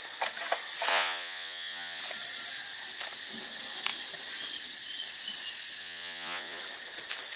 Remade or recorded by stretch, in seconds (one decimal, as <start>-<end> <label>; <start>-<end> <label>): 0.0-0.9 recorded; 0.9-2.0 remade; 2.0-5.8 recorded; 5.8-6.6 remade; 6.6-7.4 recorded

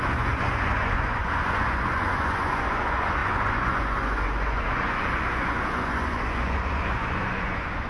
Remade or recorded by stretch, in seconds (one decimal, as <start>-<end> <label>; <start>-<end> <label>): 0.0-7.9 remade

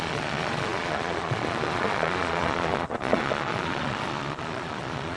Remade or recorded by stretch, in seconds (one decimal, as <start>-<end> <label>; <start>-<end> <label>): 0.0-5.2 remade

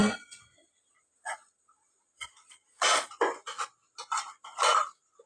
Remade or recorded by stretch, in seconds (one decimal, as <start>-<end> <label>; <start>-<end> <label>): 0.0-3.2 remade; 3.2-5.3 recorded

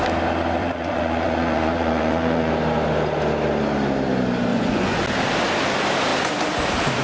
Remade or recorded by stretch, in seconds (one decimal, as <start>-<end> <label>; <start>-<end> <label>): 0.0-0.6 recorded; 0.6-2.5 remade; 2.5-4.5 recorded; 4.5-5.0 remade; 5.0-7.0 recorded

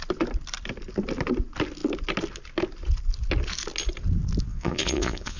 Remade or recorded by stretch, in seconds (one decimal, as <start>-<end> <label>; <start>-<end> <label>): 0.0-4.5 recorded; 4.5-5.4 remade